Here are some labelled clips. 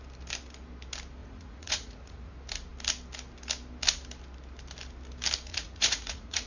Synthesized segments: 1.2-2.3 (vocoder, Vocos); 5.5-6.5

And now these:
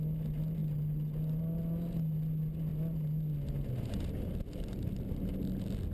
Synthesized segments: none